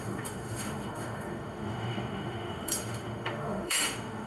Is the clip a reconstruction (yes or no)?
yes